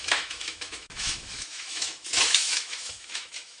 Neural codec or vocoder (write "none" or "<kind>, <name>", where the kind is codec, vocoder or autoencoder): autoencoder, DAC-VAE